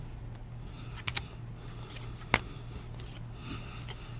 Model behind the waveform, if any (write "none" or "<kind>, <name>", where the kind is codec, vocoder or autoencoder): none